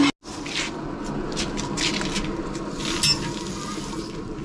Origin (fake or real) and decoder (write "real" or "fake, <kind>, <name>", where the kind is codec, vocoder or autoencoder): real